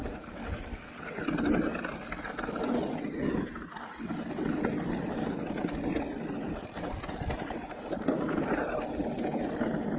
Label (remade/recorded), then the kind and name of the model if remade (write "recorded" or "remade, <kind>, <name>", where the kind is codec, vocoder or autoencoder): recorded